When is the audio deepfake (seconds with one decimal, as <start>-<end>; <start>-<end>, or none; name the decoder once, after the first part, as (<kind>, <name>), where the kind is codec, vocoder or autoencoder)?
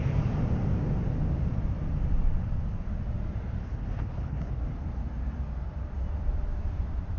3.6-4.6 (codec, HILCodec)